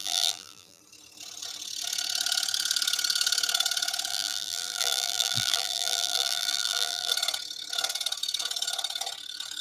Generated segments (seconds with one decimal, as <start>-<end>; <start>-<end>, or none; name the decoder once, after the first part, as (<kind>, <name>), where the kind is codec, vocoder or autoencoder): 0.0-0.8 (vocoder, BigVGAN v2); 4.1-7.1